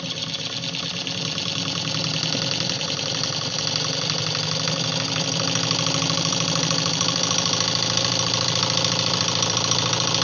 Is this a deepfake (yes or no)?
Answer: no